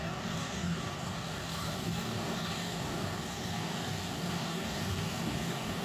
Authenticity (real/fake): fake